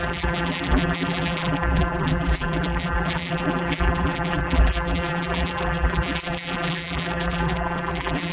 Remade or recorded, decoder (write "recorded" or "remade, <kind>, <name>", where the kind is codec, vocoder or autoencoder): remade, vocoder, BigVGAN v2